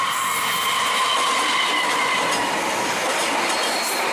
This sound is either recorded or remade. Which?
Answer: recorded